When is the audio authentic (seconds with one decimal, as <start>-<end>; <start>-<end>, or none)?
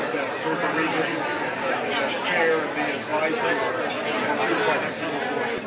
0.0-5.7